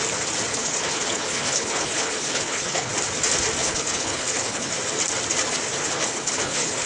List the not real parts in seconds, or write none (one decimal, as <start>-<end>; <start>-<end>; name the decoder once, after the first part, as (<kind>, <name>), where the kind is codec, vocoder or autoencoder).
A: 0.5-2.9 (codec, HILCodec); 3.6-4.7; 5.8-6.9